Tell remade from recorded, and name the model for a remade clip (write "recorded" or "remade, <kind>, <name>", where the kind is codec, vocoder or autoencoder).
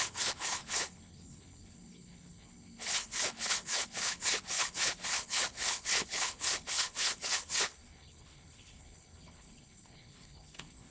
remade, codec, HILCodec